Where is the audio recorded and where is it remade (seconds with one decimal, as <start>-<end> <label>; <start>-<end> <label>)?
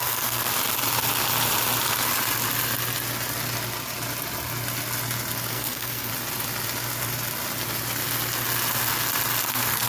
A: 0.0-0.5 remade; 0.5-5.5 recorded; 5.5-6.1 remade; 6.1-9.5 recorded; 9.5-9.9 remade